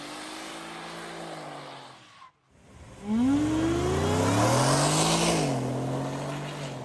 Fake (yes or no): no